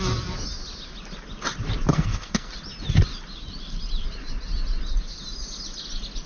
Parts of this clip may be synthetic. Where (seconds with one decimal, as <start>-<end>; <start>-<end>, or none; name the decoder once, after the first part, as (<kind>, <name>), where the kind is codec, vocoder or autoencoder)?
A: 1.9-2.5 (codec, SNAC)